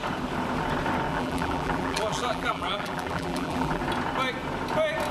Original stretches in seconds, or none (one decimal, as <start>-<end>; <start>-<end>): 0.0-1.1; 3.8-5.1